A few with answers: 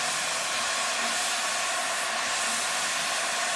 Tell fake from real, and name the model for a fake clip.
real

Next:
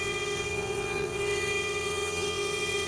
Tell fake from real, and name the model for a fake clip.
fake, vocoder, WaveNeXt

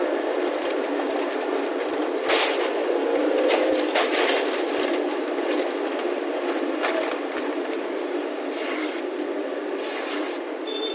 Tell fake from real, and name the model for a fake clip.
fake, vocoder, BigVGAN v2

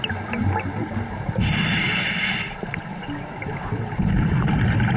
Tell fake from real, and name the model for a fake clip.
real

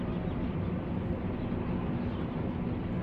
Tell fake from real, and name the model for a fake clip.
real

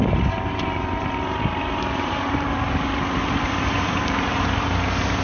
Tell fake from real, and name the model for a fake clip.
fake, vocoder, BigVGAN v2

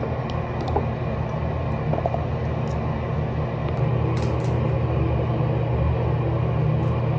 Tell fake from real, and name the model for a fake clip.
real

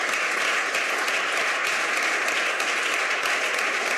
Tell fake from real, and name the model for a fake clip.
real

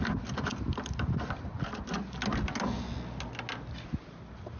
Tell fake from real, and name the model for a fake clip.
real